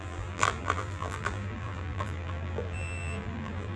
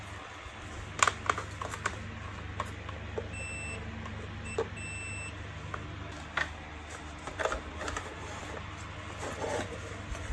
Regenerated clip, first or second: first